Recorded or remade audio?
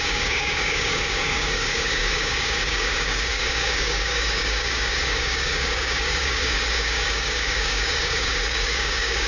remade